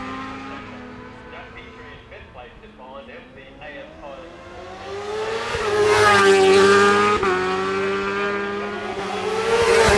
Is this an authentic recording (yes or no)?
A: yes